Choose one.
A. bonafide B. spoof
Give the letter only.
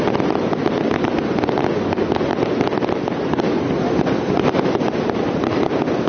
A